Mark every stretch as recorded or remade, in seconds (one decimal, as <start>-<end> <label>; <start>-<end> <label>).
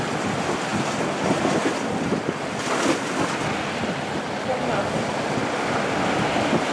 0.0-6.7 recorded